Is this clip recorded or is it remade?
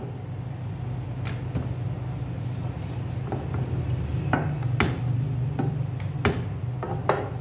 recorded